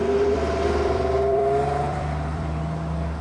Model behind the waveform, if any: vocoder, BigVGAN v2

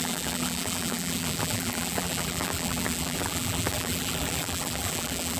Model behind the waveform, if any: vocoder, BigVGAN v2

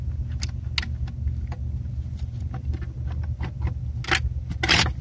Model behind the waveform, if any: none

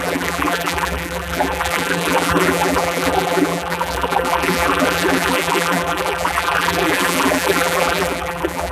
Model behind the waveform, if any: vocoder, BigVGAN v2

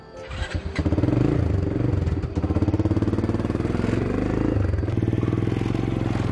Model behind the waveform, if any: none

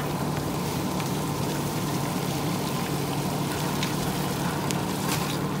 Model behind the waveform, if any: vocoder, BigVGAN v2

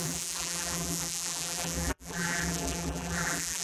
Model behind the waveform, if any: vocoder, BigVGAN v2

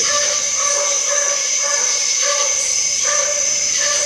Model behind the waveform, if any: vocoder, BigVGAN v2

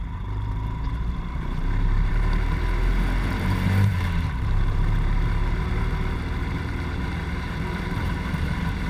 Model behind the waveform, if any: vocoder, BigVGAN v2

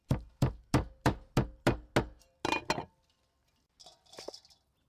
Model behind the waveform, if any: none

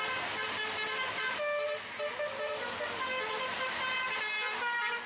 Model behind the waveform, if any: none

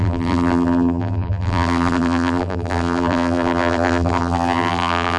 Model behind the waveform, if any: vocoder, BigVGAN v2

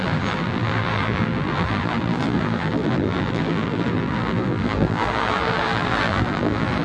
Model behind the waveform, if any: vocoder, BigVGAN v2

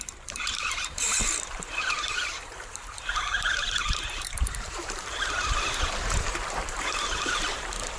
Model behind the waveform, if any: vocoder, BigVGAN v2